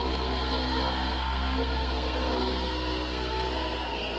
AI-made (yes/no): yes